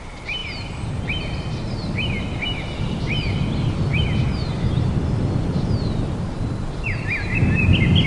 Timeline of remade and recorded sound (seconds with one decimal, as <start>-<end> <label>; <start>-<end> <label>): 0.0-3.9 recorded; 3.9-8.1 remade